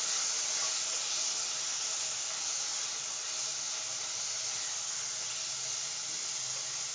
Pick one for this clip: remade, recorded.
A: recorded